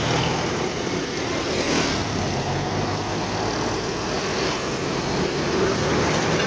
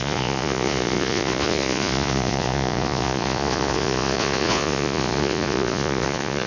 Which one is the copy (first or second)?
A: second